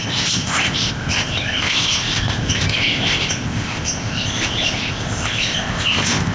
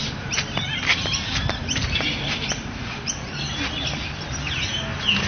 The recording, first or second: second